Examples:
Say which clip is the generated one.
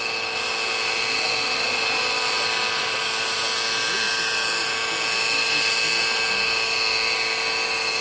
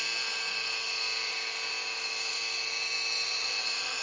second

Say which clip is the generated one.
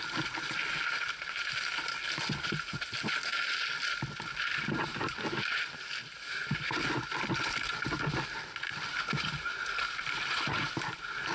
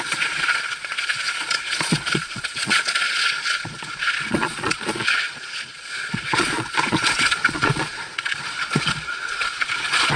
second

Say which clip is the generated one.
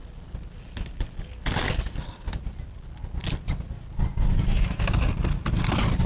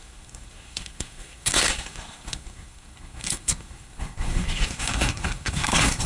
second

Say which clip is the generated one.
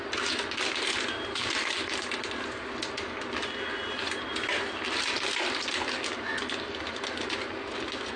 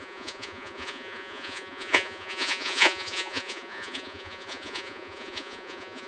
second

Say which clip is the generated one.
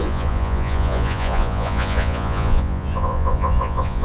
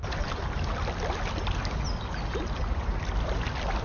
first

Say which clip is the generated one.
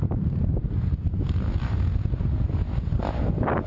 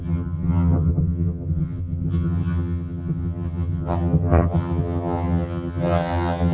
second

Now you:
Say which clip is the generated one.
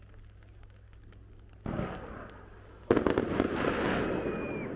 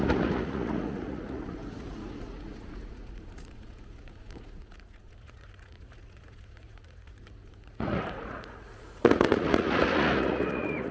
second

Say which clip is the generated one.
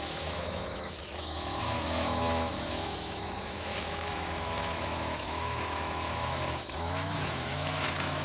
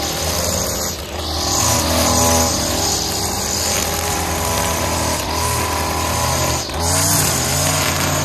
first